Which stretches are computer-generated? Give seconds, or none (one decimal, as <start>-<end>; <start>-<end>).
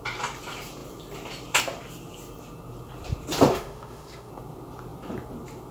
3.5-4.3